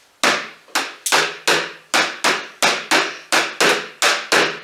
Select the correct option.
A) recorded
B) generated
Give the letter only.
A